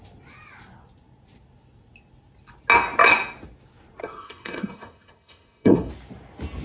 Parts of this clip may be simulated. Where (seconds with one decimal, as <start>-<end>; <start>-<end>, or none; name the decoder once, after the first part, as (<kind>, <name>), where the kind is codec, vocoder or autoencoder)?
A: 4.0-5.9 (codec, SNAC)